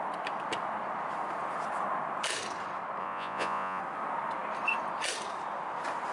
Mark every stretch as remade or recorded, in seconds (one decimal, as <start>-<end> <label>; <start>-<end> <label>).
0.0-3.0 recorded; 3.0-3.8 remade; 3.8-6.1 recorded